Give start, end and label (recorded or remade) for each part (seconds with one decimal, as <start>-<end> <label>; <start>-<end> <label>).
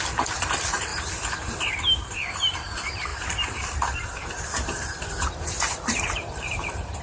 0.0-0.9 remade; 0.9-2.0 recorded; 2.0-7.0 remade